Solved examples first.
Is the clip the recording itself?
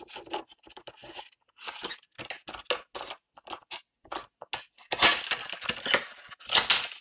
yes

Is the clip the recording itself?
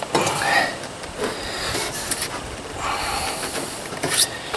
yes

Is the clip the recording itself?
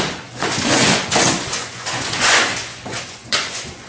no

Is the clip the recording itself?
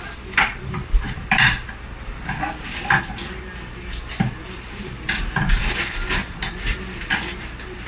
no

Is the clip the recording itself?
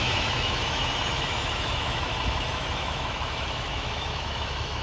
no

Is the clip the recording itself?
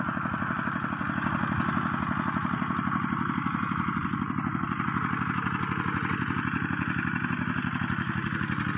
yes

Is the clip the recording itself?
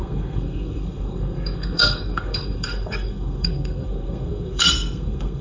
no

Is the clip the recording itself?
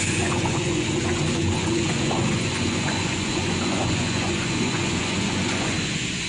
no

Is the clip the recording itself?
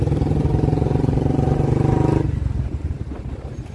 yes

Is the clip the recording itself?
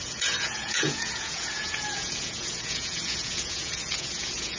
no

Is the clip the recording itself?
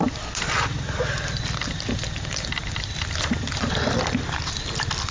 yes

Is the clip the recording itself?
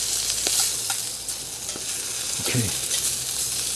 yes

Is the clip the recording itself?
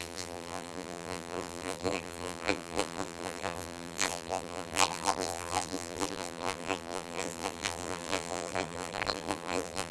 no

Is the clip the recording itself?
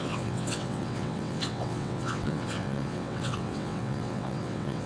no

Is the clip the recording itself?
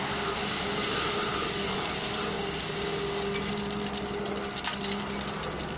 yes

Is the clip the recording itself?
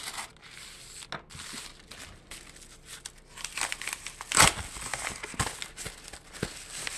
yes